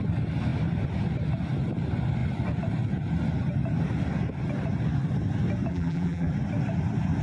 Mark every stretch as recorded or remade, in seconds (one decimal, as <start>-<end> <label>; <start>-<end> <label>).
0.0-5.7 recorded; 5.7-6.3 remade; 6.3-7.2 recorded